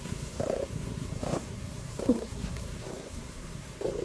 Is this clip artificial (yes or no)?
yes